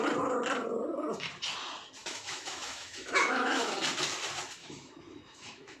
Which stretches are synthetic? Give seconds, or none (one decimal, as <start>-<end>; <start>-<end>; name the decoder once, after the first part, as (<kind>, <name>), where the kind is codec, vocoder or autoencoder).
2.0-3.7 (autoencoder, DAC-VAE); 4.6-5.8

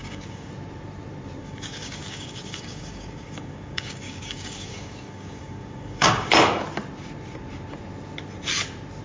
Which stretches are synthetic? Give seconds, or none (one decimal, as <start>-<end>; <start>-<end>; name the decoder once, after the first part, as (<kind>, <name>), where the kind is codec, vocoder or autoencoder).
0.0-0.5 (codec, DAC); 1.4-6.3

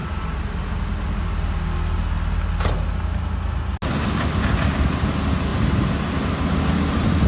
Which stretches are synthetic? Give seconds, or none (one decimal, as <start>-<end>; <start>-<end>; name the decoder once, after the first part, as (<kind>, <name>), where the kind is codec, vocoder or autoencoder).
5.5-7.3 (vocoder, BigVGAN v2)

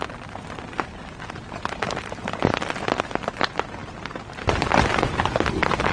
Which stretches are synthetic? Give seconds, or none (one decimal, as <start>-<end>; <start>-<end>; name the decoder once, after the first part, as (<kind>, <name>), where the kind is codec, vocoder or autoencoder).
none

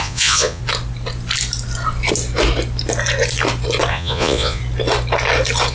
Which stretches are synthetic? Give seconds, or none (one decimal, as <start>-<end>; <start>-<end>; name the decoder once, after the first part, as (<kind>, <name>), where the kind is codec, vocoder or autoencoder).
0.0-0.6 (vocoder, Vocos); 3.9-4.6